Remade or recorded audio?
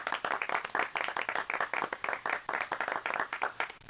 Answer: recorded